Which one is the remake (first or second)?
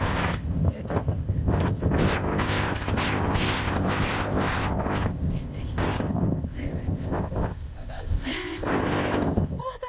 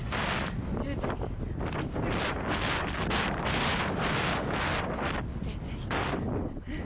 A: first